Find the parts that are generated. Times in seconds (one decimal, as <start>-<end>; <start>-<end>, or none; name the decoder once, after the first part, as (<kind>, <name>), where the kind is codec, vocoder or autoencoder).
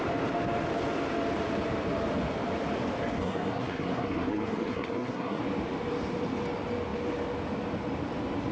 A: 3.2-5.4 (codec, SNAC)